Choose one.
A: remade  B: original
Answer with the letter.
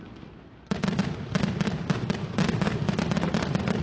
B